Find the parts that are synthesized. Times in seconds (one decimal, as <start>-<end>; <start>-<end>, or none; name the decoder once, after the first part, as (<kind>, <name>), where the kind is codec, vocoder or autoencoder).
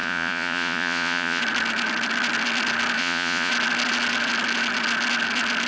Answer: 0.0-1.4 (vocoder, Vocos); 3.0-3.5